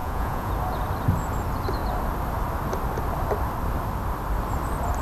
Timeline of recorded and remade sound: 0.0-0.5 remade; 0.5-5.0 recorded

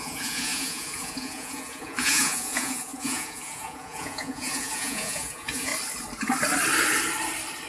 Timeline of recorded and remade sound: 0.0-5.7 remade; 5.7-7.7 recorded

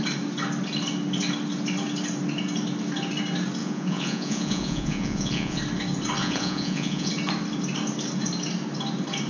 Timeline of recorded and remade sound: 0.0-3.6 recorded; 3.6-5.6 remade; 5.6-6.2 recorded; 6.2-7.1 remade; 7.1-9.3 recorded

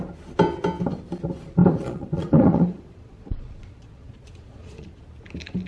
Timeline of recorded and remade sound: 0.0-1.6 recorded; 1.6-5.0 remade; 5.0-5.7 recorded

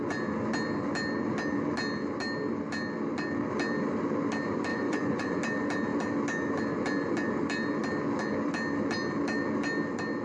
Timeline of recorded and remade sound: 0.0-4.7 recorded; 4.7-5.4 remade; 5.4-10.2 recorded